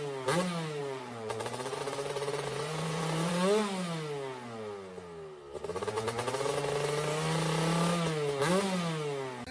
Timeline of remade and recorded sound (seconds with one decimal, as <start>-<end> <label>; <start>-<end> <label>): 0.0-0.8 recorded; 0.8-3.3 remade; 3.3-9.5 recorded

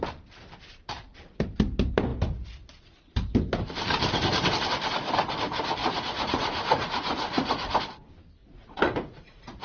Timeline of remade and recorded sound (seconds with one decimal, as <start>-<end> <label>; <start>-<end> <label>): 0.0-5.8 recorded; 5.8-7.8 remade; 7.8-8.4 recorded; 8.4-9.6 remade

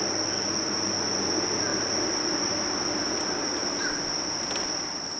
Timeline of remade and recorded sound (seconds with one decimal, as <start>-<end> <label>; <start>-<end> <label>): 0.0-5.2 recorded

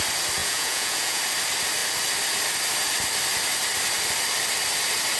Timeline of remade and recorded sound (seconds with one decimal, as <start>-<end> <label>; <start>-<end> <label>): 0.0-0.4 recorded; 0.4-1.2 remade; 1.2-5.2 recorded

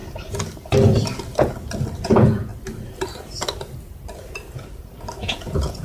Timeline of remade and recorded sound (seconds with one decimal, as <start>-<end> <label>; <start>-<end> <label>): 0.0-2.0 recorded; 2.0-2.5 remade; 2.5-5.2 recorded; 5.2-5.8 remade

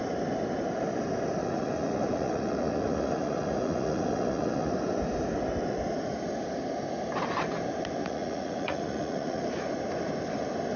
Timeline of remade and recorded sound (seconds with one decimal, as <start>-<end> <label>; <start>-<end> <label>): 0.0-1.4 recorded; 1.4-4.7 remade; 4.7-8.0 recorded; 8.0-9.4 remade; 9.4-10.8 recorded

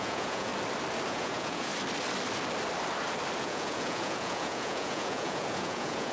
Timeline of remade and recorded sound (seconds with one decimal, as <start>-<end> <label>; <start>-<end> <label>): 0.0-0.5 remade; 0.5-1.1 recorded; 1.1-1.7 remade; 1.7-3.4 recorded; 3.4-6.1 remade

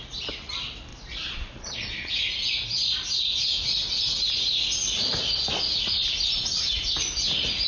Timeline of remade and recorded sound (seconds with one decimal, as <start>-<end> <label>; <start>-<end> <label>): 0.0-0.9 recorded; 0.9-2.1 remade; 2.1-7.7 recorded